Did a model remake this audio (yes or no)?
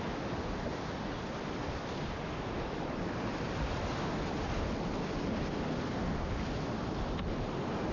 no